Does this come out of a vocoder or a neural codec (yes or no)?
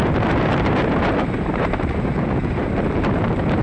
yes